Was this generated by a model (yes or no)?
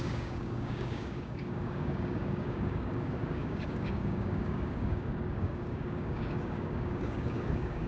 yes